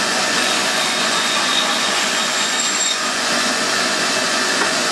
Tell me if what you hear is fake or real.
fake